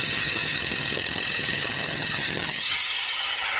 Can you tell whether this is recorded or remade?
remade